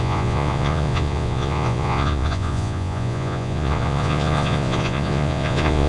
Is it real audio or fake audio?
fake